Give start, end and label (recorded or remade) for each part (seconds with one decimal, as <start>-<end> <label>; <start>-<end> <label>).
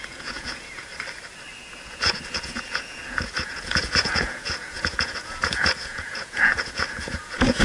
0.0-0.9 remade; 0.9-1.6 recorded; 1.6-7.6 remade